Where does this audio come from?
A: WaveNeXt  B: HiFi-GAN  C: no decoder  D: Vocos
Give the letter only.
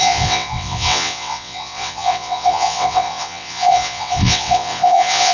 A